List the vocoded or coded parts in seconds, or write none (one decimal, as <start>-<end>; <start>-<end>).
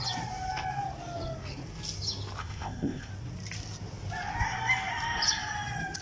2.4-3.1